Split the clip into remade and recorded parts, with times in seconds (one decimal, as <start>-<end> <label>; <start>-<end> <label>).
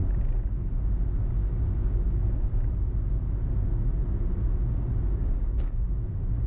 0.0-1.3 recorded; 1.3-2.5 remade; 2.5-5.1 recorded; 5.1-6.5 remade